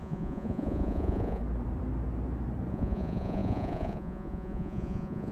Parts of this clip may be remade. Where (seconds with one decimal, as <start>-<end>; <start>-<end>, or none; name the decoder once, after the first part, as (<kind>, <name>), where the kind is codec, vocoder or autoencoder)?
0.0-1.4 (vocoder, Vocos); 2.7-5.3